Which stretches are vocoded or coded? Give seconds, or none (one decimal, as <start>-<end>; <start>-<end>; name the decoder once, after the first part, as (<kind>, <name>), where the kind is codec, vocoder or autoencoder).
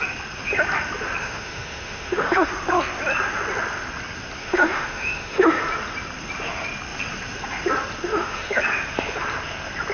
1.2-2.5 (autoencoder, DAC-VAE); 4.4-5.6; 8.1-8.6